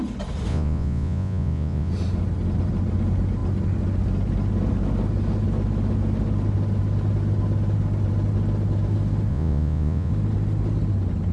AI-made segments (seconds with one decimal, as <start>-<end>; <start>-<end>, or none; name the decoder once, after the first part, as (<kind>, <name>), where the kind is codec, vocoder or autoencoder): 0.5-1.9 (vocoder, Vocos); 9.3-10.1